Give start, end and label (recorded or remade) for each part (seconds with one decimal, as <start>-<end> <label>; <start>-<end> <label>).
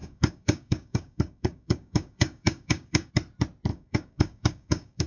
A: 0.0-3.1 remade; 3.1-3.7 recorded; 3.7-5.1 remade